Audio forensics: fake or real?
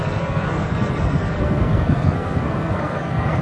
fake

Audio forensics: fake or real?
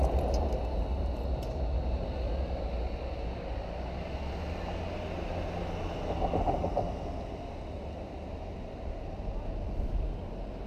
real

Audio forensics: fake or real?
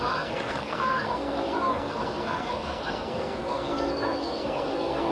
fake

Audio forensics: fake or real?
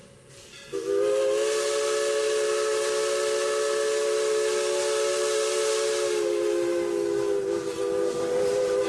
real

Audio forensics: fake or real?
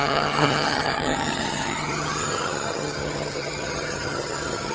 fake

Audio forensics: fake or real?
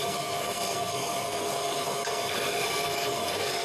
fake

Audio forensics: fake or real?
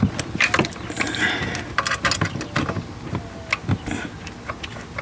real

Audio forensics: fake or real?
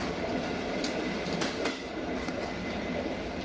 fake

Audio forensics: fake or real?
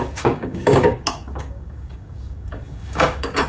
fake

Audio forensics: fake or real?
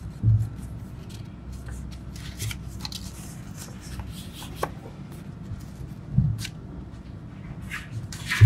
real